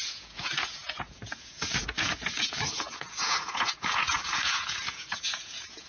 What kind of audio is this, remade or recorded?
remade